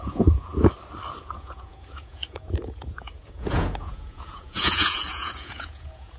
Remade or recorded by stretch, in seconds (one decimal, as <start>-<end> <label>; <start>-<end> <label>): 0.0-0.5 remade; 0.5-1.2 recorded; 1.2-6.2 remade